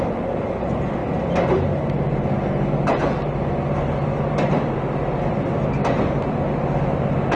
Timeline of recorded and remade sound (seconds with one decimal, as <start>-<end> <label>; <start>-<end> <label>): 0.0-7.3 recorded